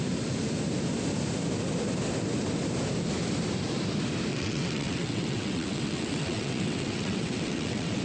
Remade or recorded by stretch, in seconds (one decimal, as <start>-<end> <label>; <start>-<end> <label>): 0.0-4.3 recorded; 4.3-8.0 remade